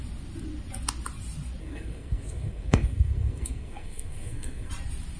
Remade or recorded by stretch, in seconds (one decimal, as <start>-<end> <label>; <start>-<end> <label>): 0.0-1.6 recorded; 1.6-4.7 remade; 4.7-5.2 recorded